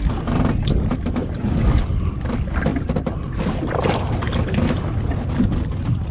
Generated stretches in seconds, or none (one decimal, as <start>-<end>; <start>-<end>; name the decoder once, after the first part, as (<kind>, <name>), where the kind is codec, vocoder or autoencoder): none